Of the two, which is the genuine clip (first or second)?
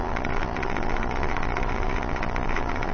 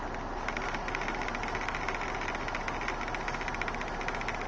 second